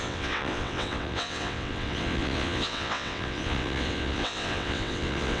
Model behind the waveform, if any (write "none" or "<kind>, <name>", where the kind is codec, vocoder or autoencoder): vocoder, WaveNeXt